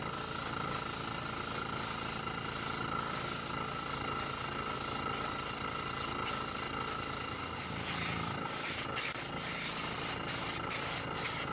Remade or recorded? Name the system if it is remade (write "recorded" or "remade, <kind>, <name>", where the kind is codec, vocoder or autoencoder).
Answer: recorded